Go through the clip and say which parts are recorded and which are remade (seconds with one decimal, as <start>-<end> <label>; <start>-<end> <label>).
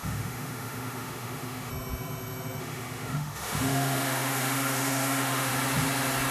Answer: 0.0-1.7 remade; 1.7-2.6 recorded; 2.6-5.5 remade; 5.5-6.3 recorded